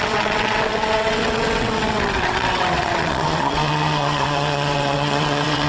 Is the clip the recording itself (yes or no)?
no